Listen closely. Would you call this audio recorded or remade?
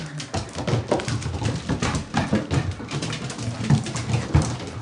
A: recorded